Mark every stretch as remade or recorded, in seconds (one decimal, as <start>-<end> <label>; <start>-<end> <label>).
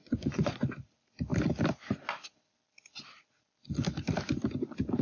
0.0-0.6 remade; 0.6-5.0 recorded